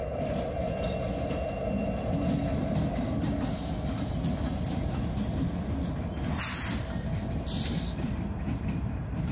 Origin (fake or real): fake